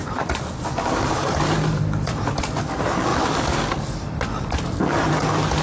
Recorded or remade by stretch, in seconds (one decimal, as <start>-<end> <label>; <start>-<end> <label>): 0.0-2.4 remade; 2.4-5.6 recorded